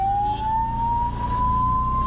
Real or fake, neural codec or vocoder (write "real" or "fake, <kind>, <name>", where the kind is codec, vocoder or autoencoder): real